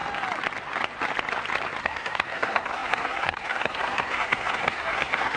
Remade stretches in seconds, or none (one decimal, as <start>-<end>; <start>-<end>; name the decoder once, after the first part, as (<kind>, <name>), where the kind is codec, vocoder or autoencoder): 1.8-5.4 (codec, SNAC)